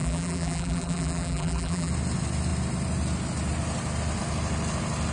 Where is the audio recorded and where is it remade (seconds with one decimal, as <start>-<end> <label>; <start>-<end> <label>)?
0.0-1.9 remade; 1.9-5.1 recorded